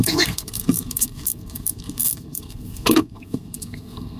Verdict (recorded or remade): remade